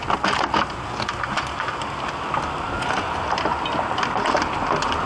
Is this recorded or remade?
recorded